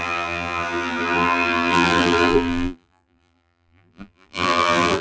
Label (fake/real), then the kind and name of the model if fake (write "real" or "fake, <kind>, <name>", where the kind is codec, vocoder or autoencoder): fake, vocoder, BigVGAN v2